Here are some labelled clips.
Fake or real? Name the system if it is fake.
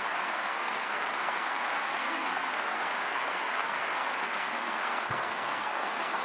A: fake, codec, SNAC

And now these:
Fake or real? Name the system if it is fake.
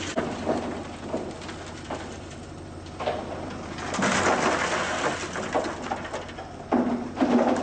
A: real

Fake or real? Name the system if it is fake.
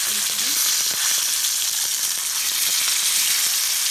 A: real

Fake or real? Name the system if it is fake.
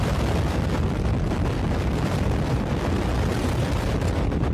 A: real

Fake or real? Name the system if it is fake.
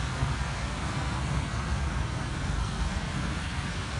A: fake, codec, SNAC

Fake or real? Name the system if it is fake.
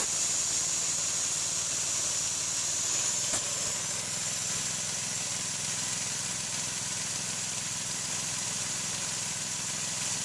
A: real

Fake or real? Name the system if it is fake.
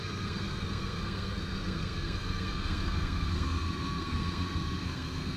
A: fake, codec, SNAC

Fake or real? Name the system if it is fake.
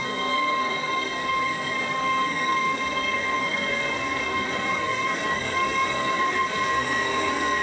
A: fake, codec, SNAC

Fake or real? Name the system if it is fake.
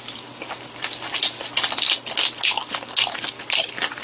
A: real